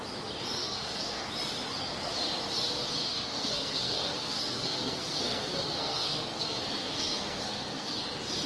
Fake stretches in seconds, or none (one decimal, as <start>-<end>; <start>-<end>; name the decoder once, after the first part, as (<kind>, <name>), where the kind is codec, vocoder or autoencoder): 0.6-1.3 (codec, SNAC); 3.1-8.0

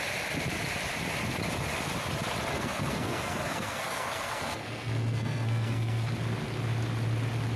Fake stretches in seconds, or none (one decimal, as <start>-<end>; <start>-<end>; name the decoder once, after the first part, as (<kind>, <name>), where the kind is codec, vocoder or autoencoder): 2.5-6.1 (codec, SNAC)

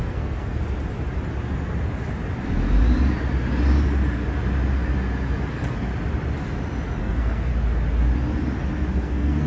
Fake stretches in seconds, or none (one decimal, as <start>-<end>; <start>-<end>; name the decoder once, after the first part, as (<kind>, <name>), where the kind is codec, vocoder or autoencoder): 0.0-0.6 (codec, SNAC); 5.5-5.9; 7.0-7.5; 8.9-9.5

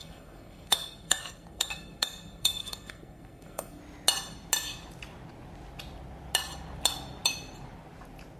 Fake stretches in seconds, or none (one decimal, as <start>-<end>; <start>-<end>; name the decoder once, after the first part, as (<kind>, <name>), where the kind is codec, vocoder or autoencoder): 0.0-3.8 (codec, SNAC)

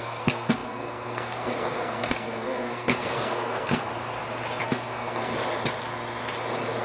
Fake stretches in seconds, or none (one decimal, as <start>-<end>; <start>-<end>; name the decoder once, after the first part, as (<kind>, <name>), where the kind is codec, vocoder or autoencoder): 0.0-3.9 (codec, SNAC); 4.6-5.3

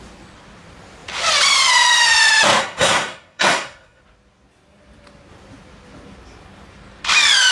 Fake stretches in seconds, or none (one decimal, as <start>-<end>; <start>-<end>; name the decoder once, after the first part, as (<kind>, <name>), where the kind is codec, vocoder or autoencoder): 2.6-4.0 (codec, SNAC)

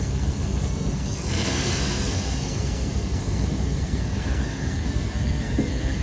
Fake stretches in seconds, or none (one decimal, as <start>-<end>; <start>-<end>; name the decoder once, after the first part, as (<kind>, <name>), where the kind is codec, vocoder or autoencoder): 0.0-6.0 (codec, SNAC)

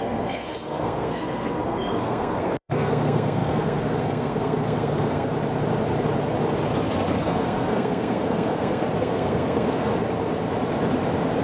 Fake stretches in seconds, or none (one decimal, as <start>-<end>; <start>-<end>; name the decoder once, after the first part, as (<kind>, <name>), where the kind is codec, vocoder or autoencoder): 0.0-5.3 (codec, SNAC); 7.2-9.9